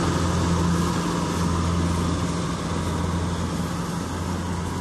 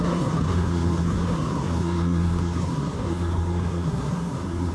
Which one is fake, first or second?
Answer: second